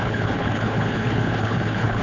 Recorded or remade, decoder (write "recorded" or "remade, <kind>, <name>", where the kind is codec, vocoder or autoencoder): remade, codec, HILCodec